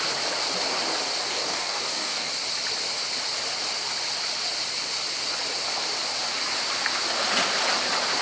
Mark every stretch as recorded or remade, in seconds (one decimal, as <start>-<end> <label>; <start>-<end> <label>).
0.0-1.3 recorded; 1.3-2.3 remade; 2.3-8.2 recorded

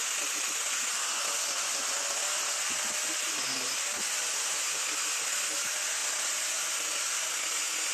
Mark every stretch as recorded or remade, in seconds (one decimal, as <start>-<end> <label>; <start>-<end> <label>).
0.0-7.9 recorded

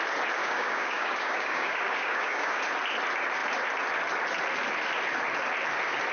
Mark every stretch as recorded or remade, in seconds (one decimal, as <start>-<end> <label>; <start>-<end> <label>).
0.0-0.4 recorded; 0.4-2.6 remade; 2.6-6.1 recorded

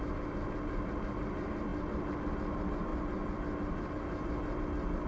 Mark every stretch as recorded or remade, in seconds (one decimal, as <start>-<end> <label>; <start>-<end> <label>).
0.0-5.1 recorded

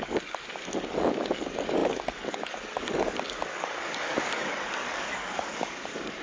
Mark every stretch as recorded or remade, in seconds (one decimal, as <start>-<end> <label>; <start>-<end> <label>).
0.0-6.2 remade